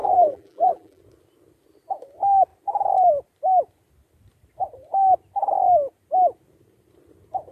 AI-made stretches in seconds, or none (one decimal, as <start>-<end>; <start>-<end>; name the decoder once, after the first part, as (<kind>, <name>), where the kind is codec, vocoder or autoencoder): 0.0-1.0 (vocoder, BigVGAN v2)